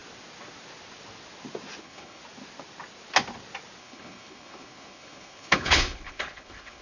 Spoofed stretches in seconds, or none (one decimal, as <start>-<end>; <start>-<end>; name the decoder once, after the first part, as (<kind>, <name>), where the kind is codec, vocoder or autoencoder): 1.8-2.2 (codec, HILCodec); 3.8-6.8